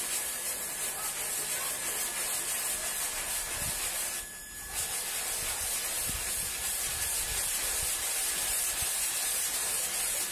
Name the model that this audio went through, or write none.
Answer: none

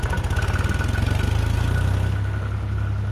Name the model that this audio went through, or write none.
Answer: none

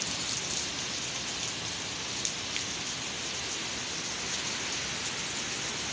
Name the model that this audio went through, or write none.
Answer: none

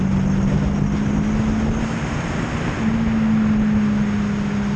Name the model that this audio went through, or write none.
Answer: none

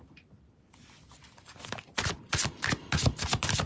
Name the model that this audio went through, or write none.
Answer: none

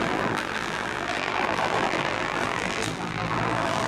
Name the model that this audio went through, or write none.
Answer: vocoder, BigVGAN v2